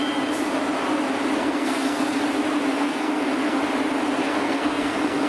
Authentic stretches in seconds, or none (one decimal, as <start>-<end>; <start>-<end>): 0.0-1.4; 2.2-2.7; 3.6-4.2